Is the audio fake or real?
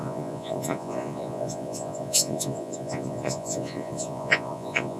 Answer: fake